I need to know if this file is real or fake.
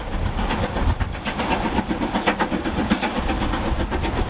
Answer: real